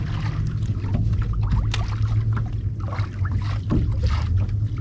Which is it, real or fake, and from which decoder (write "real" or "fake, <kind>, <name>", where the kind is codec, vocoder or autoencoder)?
real